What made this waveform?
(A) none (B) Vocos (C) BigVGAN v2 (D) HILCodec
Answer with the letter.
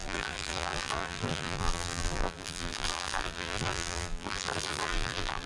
C